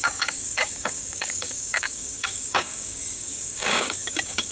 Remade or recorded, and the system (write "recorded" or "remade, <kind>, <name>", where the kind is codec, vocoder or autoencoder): remade, codec, DAC